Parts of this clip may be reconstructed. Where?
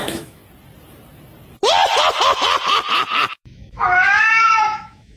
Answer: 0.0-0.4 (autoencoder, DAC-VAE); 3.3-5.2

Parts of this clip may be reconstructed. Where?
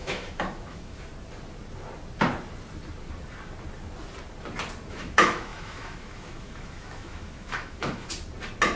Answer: 0.0-1.1 (autoencoder, DAC-VAE); 4.9-8.1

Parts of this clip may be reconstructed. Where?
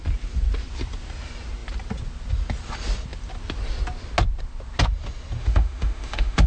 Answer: 5.4-6.5 (autoencoder, DAC-VAE)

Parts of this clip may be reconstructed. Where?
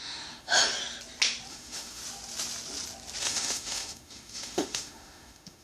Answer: 0.0-0.6 (autoencoder, DAC-VAE); 1.5-2.0; 3.2-5.6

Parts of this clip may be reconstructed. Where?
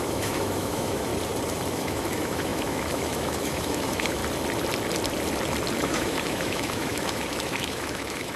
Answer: 0.0-1.1 (autoencoder, DAC-VAE); 1.7-4.2; 5.8-8.4